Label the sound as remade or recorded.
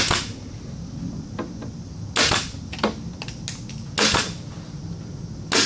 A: recorded